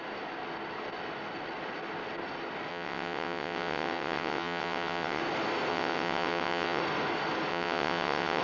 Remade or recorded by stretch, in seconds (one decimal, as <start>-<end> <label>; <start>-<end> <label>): 0.0-2.7 recorded; 2.7-5.2 remade; 5.2-5.7 recorded; 5.7-6.8 remade; 6.8-7.5 recorded; 7.5-8.4 remade